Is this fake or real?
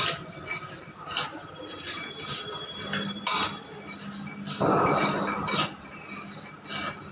real